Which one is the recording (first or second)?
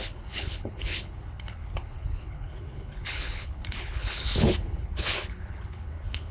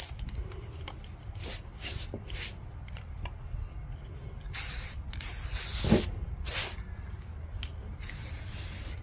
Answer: second